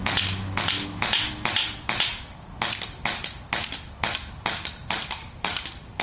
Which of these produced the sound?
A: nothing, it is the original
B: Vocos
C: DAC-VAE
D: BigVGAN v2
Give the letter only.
A